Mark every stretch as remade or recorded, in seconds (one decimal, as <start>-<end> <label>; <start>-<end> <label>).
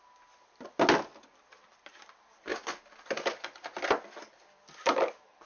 0.0-5.5 recorded